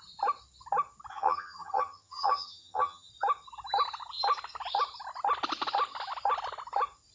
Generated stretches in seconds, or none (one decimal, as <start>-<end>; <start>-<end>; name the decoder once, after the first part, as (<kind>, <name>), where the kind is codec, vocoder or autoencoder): 1.1-3.1 (vocoder, HiFi-GAN)